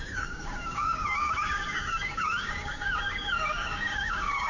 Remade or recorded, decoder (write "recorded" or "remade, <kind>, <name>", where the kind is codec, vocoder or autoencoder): remade, codec, DAC